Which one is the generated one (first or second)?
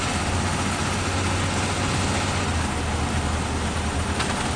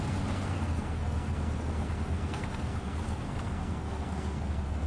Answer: second